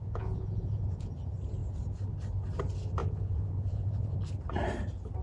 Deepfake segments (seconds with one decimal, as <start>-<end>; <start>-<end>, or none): 0.0-1.1; 3.0-4.2